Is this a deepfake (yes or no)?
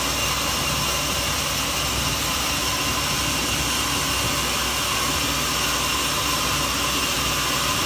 no